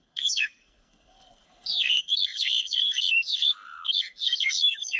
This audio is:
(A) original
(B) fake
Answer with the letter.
B